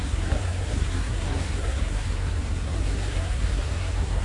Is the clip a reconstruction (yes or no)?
yes